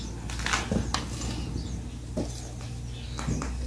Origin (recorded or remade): recorded